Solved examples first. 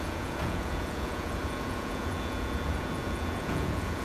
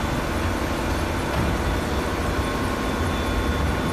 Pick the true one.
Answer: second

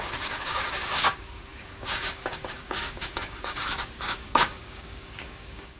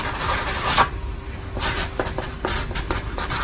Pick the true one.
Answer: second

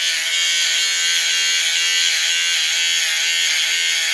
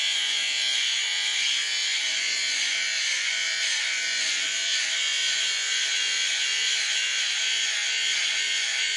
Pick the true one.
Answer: first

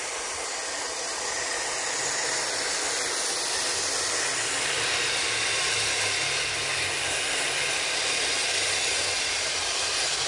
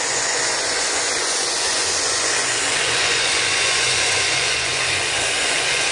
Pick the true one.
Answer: first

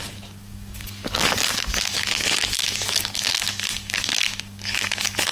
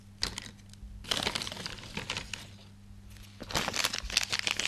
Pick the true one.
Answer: second